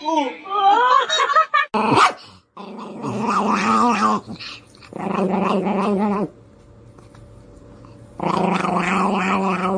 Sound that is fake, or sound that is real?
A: real